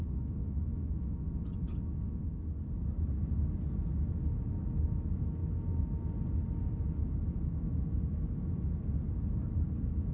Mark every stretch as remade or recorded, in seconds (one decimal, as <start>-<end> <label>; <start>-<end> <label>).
0.0-10.1 recorded